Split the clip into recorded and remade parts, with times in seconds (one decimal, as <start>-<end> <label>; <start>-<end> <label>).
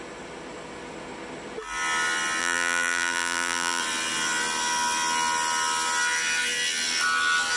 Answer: 0.0-2.4 recorded; 2.4-3.8 remade; 3.8-7.6 recorded